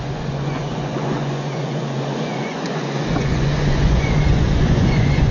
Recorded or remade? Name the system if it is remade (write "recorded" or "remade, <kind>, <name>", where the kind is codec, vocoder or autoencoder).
remade, vocoder, Vocos